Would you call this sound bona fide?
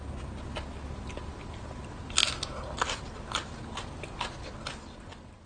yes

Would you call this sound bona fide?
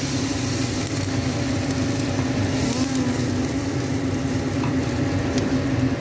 yes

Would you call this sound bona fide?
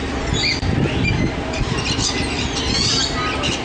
yes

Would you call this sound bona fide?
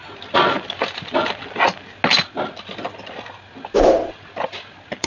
yes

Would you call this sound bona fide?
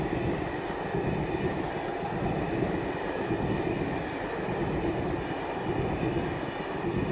yes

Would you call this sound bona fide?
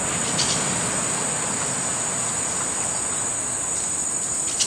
yes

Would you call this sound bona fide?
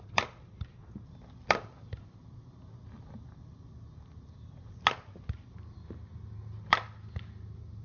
yes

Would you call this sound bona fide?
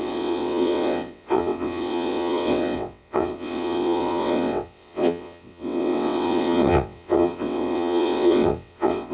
no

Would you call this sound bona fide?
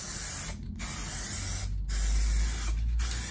yes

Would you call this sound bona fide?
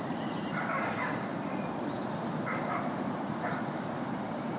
yes